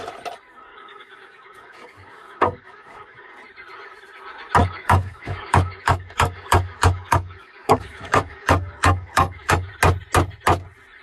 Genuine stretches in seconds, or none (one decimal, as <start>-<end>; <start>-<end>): 0.0-0.7; 3.3-4.6; 9.7-11.0